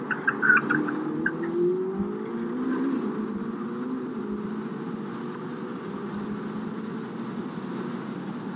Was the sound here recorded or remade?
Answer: recorded